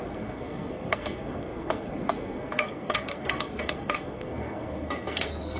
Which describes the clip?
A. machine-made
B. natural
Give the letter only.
A